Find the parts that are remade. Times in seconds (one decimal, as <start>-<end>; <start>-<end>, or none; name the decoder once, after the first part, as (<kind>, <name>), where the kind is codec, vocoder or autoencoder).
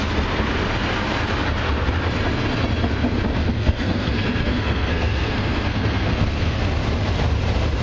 3.4-6.6 (codec, SNAC)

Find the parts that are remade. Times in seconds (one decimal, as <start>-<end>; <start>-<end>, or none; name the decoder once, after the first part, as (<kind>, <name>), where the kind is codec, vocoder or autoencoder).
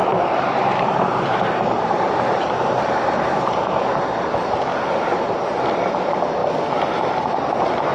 0.0-6.4 (vocoder, BigVGAN v2); 7.1-7.9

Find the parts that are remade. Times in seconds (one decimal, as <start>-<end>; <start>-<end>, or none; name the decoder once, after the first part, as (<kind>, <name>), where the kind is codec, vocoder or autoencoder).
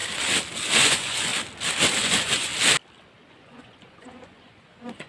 0.7-1.3 (vocoder, Vocos); 2.0-2.5; 3.2-5.1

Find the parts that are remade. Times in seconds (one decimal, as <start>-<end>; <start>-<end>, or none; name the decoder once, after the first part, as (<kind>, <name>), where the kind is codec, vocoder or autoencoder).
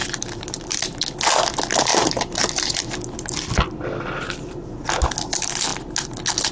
0.0-1.0 (vocoder, BigVGAN v2); 1.9-4.8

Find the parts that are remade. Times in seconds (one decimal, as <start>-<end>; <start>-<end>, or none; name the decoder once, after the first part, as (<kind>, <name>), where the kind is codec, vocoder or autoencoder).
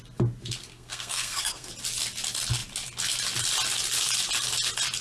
0.7-1.7 (codec, SNAC)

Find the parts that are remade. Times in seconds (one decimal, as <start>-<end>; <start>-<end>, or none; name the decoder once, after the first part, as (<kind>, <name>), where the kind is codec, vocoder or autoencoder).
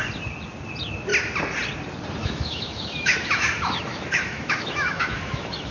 2.2-5.7 (autoencoder, DAC-VAE)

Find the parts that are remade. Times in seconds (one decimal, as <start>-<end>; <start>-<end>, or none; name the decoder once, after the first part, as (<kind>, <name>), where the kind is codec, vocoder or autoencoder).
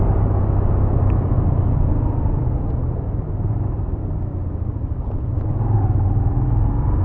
none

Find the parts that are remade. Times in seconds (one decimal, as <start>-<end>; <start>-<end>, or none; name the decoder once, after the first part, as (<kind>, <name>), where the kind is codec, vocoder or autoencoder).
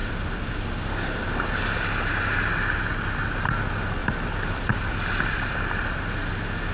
0.0-1.5 (vocoder, BigVGAN v2); 4.0-6.0